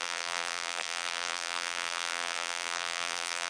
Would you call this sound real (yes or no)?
no